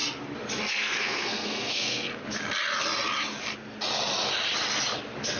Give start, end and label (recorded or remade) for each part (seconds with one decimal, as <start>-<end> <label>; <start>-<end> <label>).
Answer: 0.0-0.7 recorded; 0.7-2.1 remade; 2.1-5.4 recorded